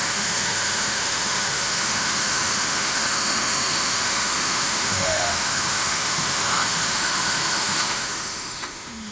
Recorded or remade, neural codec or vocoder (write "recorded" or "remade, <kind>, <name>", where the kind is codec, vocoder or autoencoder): remade, autoencoder, DAC-VAE